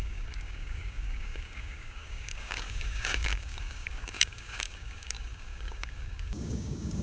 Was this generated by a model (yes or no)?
yes